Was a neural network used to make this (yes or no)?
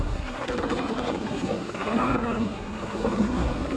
yes